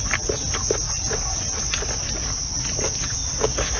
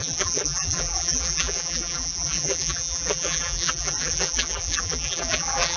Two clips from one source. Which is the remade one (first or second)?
second